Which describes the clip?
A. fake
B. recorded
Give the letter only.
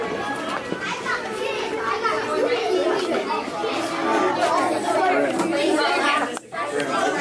B